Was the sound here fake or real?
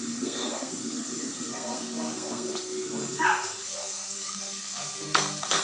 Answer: fake